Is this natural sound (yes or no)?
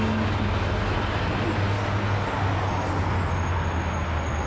yes